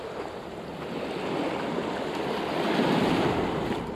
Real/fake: real